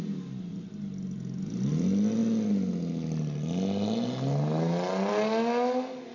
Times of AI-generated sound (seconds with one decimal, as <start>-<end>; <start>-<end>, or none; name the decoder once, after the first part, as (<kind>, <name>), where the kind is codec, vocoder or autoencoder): none

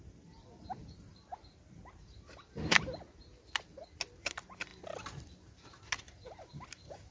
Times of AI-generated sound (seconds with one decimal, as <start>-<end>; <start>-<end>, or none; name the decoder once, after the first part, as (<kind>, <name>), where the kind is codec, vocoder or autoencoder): 0.0-3.3 (vocoder, BigVGAN v2); 4.2-4.7; 6.0-7.1

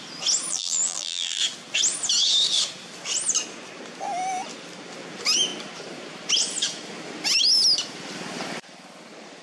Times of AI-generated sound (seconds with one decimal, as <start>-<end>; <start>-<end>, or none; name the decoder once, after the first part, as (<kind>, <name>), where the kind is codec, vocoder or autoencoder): 0.5-1.4 (vocoder, BigVGAN v2)

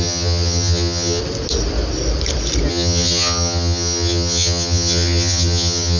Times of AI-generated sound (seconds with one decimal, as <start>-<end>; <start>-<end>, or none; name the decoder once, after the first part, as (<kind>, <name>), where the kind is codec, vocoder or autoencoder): 0.0-1.2 (vocoder, HiFi-GAN); 2.7-6.0

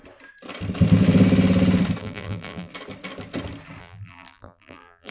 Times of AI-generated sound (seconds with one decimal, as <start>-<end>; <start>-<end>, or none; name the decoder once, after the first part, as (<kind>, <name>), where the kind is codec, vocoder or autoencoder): 2.0-2.7 (vocoder, BigVGAN v2); 3.8-5.1

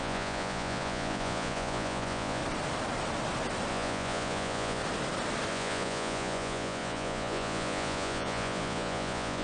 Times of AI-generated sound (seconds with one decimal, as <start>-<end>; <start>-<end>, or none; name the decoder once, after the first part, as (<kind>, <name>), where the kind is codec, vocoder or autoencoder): 0.0-2.4 (vocoder, Vocos); 3.7-4.8; 5.5-9.4